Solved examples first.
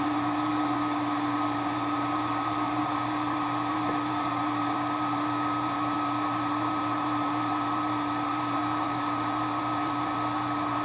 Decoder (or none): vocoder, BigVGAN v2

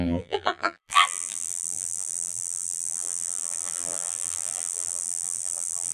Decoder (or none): vocoder, BigVGAN v2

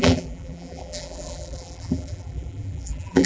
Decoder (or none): vocoder, BigVGAN v2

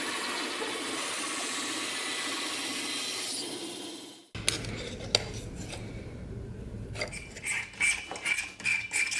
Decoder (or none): none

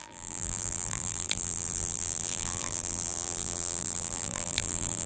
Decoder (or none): vocoder, BigVGAN v2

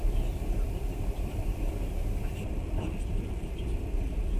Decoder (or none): vocoder, BigVGAN v2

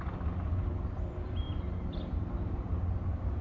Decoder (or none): vocoder, BigVGAN v2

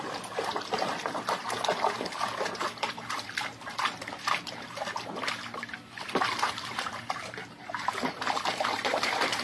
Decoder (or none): vocoder, BigVGAN v2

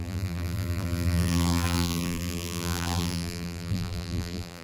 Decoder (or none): vocoder, BigVGAN v2